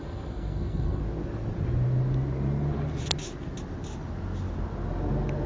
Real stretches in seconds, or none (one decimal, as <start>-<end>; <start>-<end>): 1.0-5.5